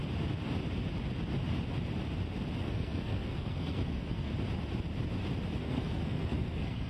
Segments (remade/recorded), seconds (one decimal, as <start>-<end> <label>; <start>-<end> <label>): 0.0-2.6 recorded; 2.6-4.3 remade; 4.3-5.6 recorded; 5.6-6.9 remade